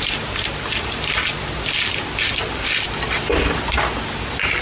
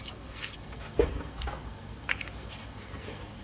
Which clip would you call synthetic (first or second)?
second